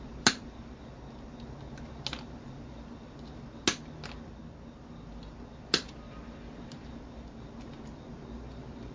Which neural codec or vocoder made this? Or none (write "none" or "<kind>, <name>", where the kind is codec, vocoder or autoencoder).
none